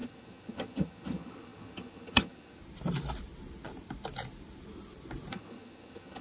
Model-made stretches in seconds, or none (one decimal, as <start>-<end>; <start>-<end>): 0.0-2.6; 5.3-6.2